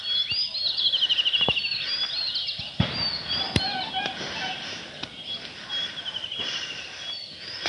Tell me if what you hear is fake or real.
real